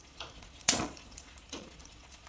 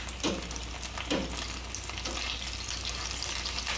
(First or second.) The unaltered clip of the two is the second